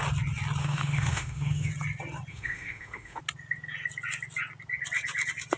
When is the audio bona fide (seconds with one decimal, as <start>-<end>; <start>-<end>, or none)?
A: 0.0-0.6; 1.7-2.3; 3.2-5.6